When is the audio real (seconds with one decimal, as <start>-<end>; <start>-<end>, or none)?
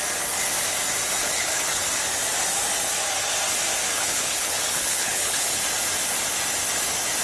0.0-1.2; 1.9-3.9; 5.6-7.2